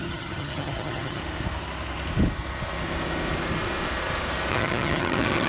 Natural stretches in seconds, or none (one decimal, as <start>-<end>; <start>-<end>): 1.2-4.5